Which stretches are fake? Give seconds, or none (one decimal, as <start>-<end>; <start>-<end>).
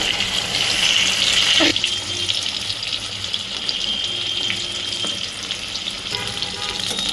none